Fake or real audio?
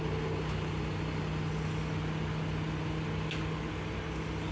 real